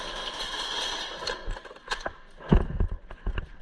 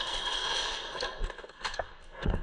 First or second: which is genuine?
first